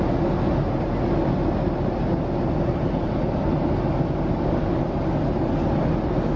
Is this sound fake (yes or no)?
no